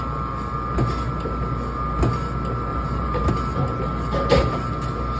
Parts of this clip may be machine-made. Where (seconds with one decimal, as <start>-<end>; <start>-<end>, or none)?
2.7-3.3